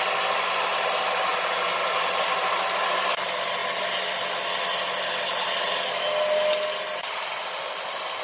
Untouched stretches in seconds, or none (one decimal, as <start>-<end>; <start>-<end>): 0.0-8.2